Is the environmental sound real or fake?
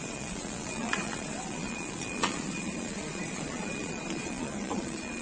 fake